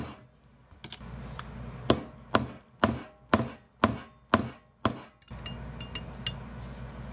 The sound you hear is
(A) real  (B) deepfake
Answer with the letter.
A